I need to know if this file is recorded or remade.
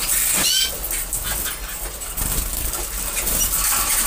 recorded